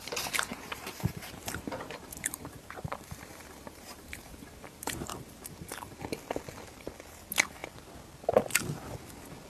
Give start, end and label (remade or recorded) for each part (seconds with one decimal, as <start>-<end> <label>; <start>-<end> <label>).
0.0-0.5 recorded; 0.5-5.3 remade; 5.3-9.5 recorded